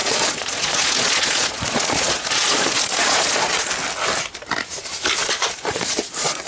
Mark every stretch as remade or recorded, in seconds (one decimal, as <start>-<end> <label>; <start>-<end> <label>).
0.0-3.7 remade; 3.7-5.2 recorded; 5.2-6.5 remade